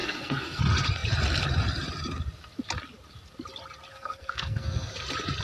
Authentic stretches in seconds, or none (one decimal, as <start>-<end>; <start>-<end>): 0.6-3.9; 4.9-5.4